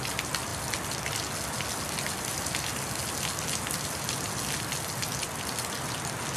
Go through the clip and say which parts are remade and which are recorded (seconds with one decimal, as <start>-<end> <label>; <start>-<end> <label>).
0.0-6.4 recorded